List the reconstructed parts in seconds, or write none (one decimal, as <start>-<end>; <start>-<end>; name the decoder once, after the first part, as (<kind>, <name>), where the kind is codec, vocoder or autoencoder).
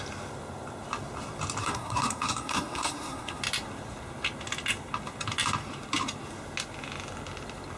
1.6-3.4 (codec, SNAC)